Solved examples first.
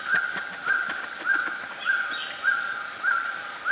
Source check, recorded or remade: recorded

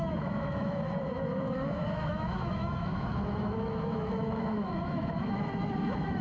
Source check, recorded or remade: remade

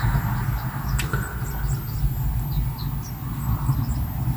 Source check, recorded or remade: recorded